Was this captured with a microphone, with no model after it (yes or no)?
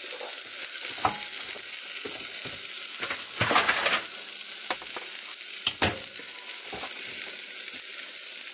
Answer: yes